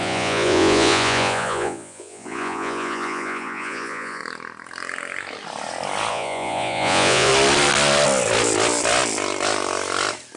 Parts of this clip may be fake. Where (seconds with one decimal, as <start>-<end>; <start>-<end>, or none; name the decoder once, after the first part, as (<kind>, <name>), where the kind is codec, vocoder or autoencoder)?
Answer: 0.0-4.2 (vocoder, Vocos); 6.1-7.3